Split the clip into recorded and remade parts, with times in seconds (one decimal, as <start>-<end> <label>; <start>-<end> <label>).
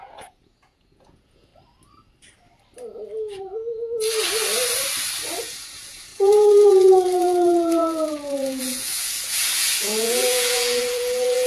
0.0-1.5 remade; 1.5-5.4 recorded; 5.4-11.5 remade